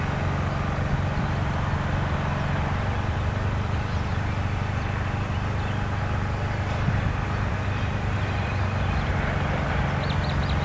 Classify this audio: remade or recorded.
recorded